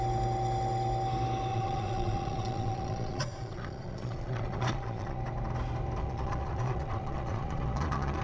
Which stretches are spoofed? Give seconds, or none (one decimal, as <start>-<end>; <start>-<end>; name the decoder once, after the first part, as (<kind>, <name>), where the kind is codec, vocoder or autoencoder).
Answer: 1.5-5.2 (vocoder, Vocos); 6.0-8.2

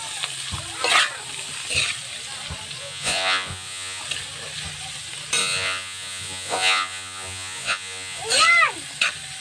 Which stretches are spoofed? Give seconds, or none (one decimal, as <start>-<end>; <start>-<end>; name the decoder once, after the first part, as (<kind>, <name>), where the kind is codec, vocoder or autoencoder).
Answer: 2.8-4.0 (vocoder, Vocos); 5.4-8.2

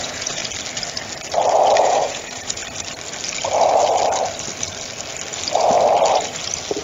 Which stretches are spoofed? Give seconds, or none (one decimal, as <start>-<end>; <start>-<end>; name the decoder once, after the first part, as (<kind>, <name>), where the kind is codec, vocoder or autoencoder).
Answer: 0.0-0.4 (vocoder, Vocos); 1.8-2.6

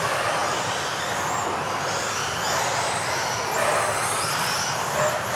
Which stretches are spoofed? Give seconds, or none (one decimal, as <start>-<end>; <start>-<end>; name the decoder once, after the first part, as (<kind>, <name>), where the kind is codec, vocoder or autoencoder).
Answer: none

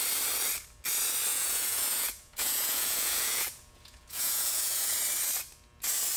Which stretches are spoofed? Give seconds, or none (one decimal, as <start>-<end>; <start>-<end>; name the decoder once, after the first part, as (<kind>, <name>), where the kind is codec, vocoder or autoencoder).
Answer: 1.3-5.0 (vocoder, Vocos)

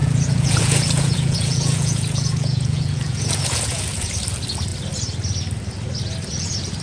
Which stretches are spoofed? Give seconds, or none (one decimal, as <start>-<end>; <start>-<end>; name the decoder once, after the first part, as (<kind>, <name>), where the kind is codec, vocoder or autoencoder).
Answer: 0.0-4.1 (vocoder, Vocos)

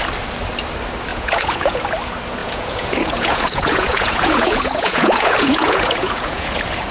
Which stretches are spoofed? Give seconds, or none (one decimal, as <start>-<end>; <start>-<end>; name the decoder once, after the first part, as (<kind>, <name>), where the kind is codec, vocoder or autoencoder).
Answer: 1.1-1.8 (vocoder, Vocos); 2.4-6.5

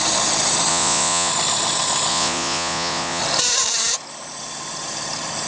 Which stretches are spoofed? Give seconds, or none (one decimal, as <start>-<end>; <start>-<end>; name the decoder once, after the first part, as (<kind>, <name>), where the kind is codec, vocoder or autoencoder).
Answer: 0.7-1.3 (vocoder, Vocos); 2.1-3.2